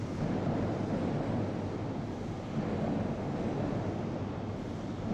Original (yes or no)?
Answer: yes